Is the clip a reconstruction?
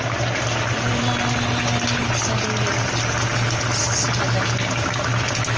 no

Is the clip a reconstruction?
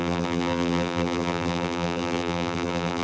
yes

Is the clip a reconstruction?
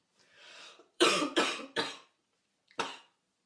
yes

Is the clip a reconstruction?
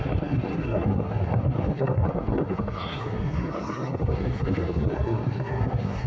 yes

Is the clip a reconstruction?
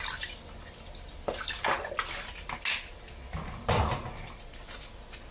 no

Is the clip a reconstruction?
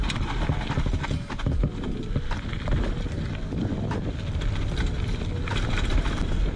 no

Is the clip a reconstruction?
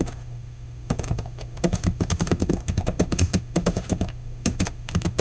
yes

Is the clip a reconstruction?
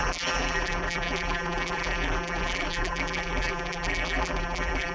yes